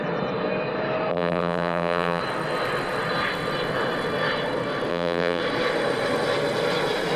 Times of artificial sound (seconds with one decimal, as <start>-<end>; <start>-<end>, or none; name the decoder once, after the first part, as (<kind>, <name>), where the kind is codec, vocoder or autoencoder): 1.1-2.2 (vocoder, BigVGAN v2); 4.9-5.4